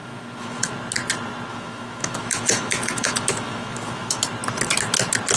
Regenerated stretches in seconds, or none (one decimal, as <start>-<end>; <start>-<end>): 0.0-0.7; 1.5-4.2